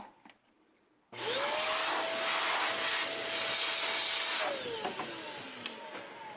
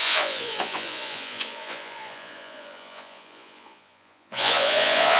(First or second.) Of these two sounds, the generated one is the second